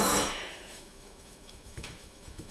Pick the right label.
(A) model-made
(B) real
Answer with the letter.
A